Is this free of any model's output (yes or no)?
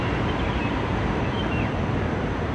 yes